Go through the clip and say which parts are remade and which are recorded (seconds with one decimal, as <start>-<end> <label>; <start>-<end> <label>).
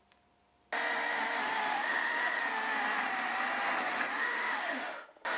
0.0-1.7 recorded; 1.7-2.4 remade; 2.4-4.1 recorded; 4.1-5.4 remade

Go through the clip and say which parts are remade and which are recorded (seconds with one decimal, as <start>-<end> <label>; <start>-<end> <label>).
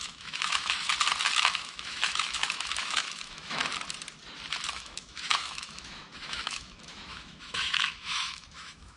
0.0-0.9 remade; 0.9-1.4 recorded; 1.4-3.6 remade; 3.6-4.7 recorded; 4.7-9.0 remade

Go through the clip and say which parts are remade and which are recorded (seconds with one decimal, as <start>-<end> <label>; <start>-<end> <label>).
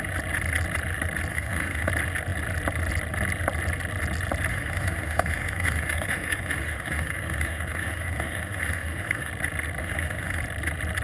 0.0-1.3 recorded; 1.3-1.9 remade; 1.9-4.5 recorded; 4.5-9.3 remade; 9.3-9.8 recorded; 9.8-10.4 remade; 10.4-11.0 recorded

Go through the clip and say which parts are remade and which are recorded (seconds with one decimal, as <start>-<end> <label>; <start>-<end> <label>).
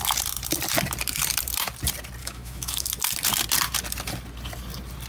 0.0-2.2 recorded; 2.2-2.9 remade; 2.9-5.1 recorded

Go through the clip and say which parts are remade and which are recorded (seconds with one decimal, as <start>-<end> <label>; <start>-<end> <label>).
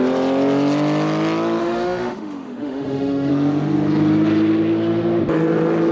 0.0-1.6 recorded; 1.6-3.3 remade; 3.3-5.9 recorded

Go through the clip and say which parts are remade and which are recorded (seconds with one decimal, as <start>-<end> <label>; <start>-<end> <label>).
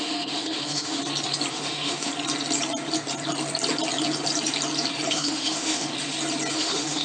0.0-1.0 remade; 1.0-1.5 recorded; 1.5-2.1 remade; 2.1-5.1 recorded; 5.1-5.9 remade; 5.9-6.5 recorded; 6.5-7.0 remade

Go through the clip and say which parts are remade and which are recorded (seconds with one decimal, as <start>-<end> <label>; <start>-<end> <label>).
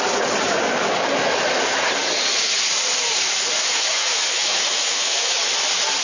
0.0-3.6 recorded; 3.6-5.4 remade; 5.4-6.0 recorded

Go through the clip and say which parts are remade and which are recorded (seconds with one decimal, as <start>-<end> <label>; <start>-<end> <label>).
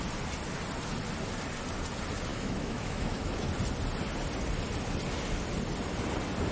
0.0-2.3 recorded; 2.3-3.5 remade; 3.5-6.5 recorded